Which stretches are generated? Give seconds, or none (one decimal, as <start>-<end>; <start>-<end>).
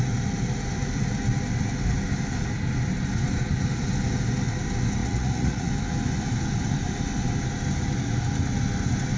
5.0-5.7